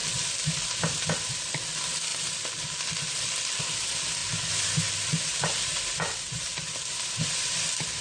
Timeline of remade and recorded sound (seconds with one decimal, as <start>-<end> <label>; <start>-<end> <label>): 0.0-8.0 remade